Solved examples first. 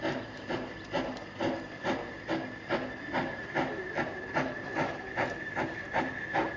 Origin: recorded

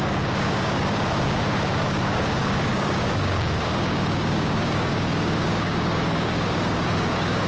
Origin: remade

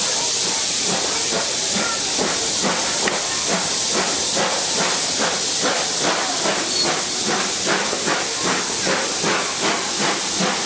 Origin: recorded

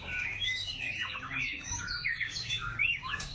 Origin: remade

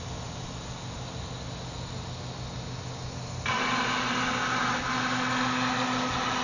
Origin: recorded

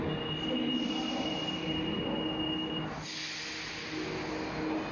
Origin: recorded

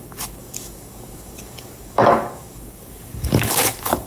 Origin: remade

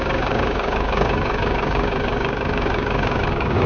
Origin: remade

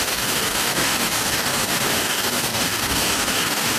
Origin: remade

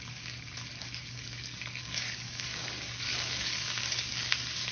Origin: remade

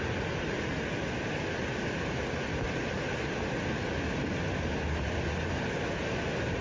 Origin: recorded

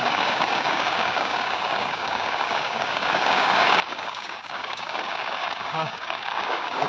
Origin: remade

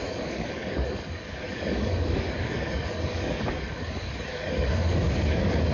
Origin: remade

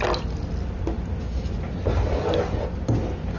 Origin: recorded